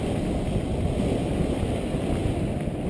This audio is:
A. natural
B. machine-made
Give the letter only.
A